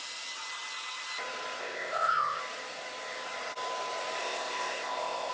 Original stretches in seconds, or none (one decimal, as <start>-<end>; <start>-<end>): 0.0-1.6; 2.4-4.2